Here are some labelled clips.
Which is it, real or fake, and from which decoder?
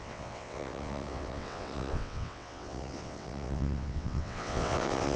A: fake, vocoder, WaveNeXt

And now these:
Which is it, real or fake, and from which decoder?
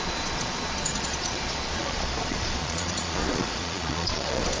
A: fake, vocoder, Vocos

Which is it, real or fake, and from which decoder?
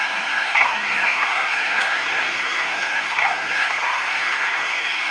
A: fake, codec, SNAC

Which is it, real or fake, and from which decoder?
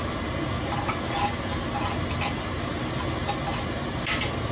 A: real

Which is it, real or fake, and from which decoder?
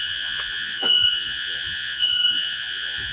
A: fake, vocoder, Vocos